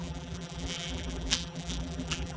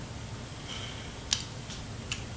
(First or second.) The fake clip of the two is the first